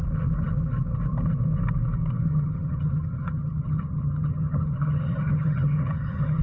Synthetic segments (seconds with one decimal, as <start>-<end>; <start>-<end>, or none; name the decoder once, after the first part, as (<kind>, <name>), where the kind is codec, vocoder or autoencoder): 2.3-6.4 (vocoder, HiFi-GAN)